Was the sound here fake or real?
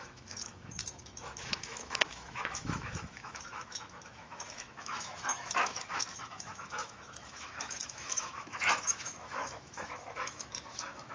fake